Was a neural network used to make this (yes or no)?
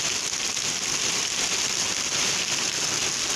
no